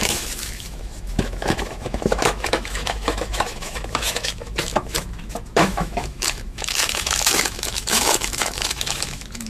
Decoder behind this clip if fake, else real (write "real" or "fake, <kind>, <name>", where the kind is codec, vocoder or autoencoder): fake, autoencoder, DAC-VAE